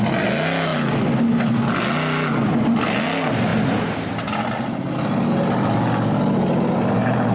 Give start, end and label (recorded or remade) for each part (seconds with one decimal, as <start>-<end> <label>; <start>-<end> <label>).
0.0-7.3 recorded